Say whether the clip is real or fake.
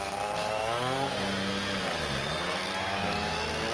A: real